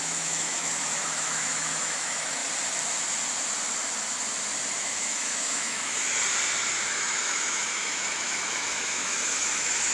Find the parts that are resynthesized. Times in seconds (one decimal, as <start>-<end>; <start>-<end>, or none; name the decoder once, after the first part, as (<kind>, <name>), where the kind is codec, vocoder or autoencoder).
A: 0.0-2.4 (autoencoder, DAC-VAE); 4.8-6.1; 6.8-9.9